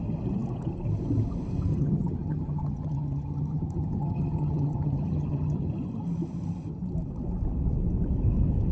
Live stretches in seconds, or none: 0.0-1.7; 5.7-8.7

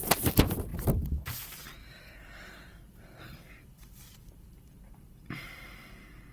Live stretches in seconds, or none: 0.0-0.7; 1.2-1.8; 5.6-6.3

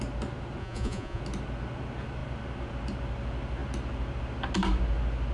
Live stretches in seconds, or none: 0.0-0.6; 1.2-5.3

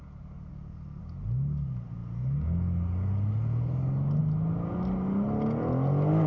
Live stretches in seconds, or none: 0.0-0.5; 1.0-6.3

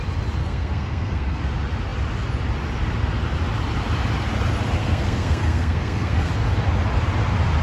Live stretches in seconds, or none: 0.0-0.4; 1.4-4.8; 6.3-7.6